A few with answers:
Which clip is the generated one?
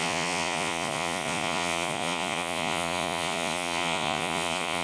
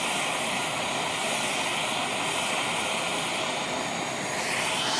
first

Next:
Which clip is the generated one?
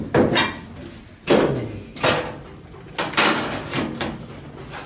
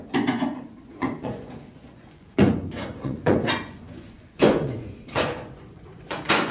second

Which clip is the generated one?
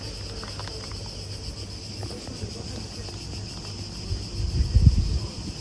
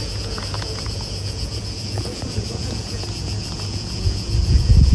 second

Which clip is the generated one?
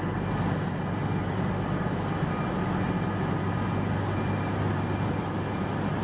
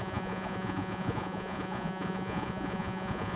second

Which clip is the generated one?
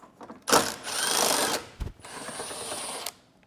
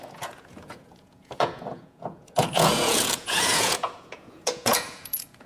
second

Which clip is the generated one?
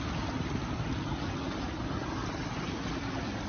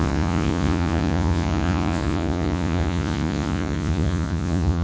second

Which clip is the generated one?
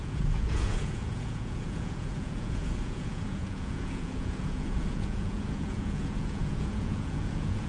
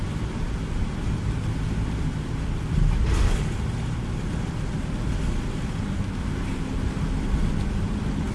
first